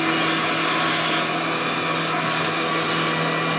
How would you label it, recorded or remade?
recorded